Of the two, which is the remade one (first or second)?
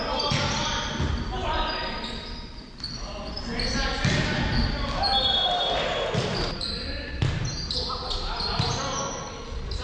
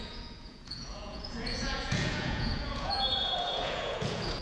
second